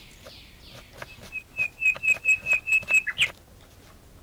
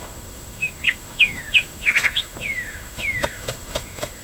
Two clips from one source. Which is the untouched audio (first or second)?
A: first